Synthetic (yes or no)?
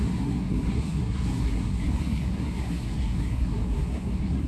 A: yes